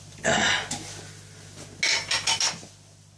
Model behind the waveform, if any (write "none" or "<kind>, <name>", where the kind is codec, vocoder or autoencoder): none